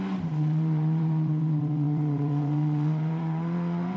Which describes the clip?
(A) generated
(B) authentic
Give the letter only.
A